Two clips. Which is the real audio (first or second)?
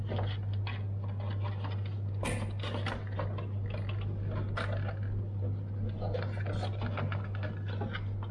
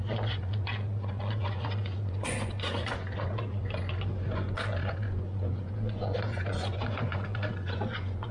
first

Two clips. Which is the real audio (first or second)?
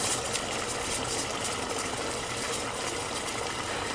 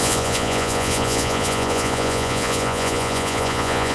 first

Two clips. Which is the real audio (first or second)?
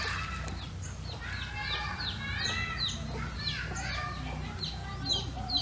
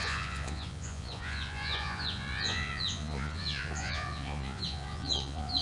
first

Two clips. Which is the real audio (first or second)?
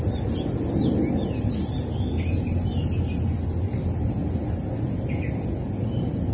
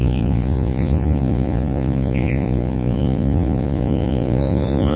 first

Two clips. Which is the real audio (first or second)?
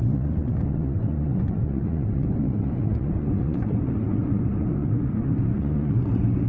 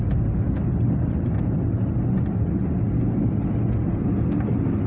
second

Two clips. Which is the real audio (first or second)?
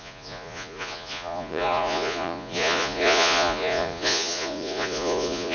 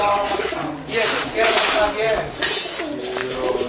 second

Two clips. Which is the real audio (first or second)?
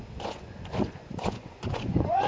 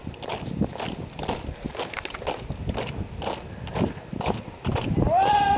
second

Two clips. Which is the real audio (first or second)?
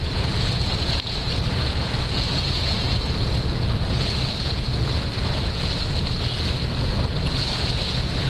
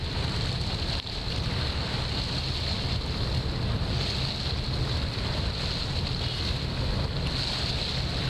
second